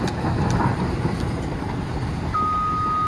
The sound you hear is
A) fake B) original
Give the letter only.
B